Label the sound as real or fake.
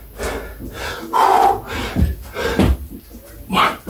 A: real